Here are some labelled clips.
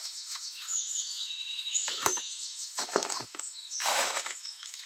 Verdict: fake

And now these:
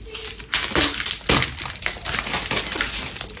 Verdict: real